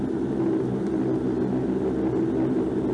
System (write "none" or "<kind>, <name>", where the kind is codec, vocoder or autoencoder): none